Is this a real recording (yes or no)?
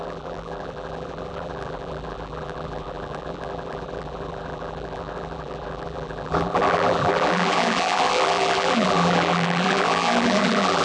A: no